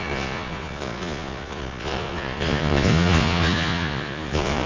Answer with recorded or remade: remade